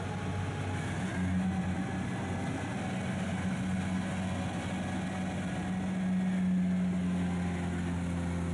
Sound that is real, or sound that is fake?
real